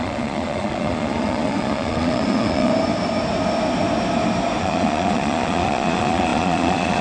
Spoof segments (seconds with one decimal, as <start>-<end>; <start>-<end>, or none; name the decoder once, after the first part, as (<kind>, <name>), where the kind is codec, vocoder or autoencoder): 0.0-2.7 (vocoder, Vocos); 4.6-7.0